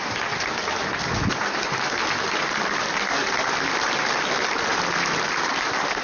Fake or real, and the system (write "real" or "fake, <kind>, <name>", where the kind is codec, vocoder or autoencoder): real